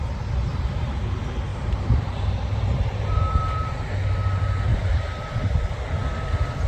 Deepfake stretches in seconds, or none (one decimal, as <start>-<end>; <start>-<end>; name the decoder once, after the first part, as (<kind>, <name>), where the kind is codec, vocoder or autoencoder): 0.5-1.0 (vocoder, BigVGAN v2); 1.5-3.7; 4.7-5.7